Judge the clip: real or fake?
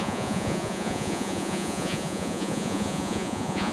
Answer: fake